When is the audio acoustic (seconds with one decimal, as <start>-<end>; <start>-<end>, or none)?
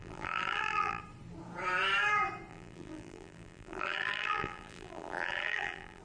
1.0-2.5